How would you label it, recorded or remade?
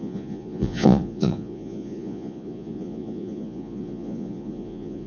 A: remade